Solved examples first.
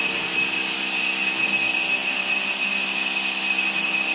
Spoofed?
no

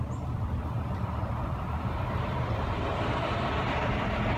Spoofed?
yes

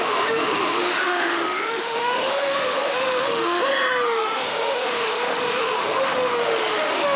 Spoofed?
yes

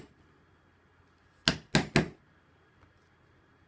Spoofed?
no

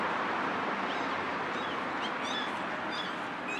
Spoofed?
yes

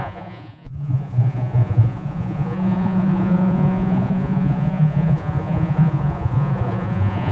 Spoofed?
yes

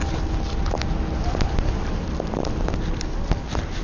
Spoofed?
no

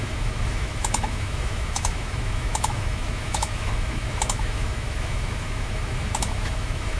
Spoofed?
yes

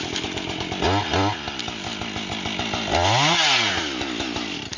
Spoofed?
no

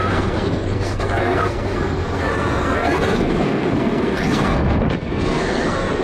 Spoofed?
yes